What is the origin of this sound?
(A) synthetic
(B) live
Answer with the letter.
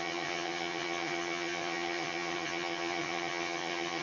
A